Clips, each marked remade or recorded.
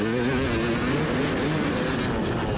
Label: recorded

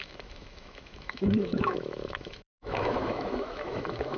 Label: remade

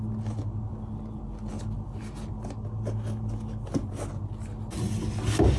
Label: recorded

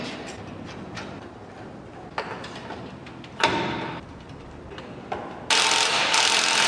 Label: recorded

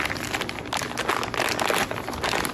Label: recorded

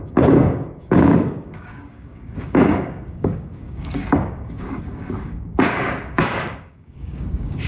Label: remade